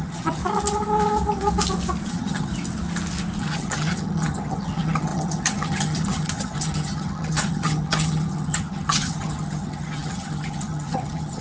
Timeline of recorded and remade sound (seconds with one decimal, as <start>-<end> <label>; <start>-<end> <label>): 0.0-0.4 remade; 0.4-2.1 recorded; 2.1-2.5 remade; 2.5-3.4 recorded; 3.4-11.4 remade